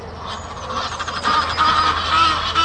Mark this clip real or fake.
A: real